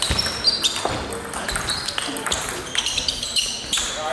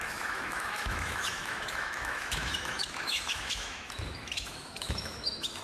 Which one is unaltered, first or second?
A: first